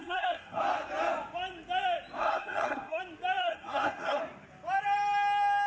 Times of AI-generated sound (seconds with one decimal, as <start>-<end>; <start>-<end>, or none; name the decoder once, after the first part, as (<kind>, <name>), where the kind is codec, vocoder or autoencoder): 0.0-0.6 (codec, SNAC); 2.2-3.0; 3.4-4.2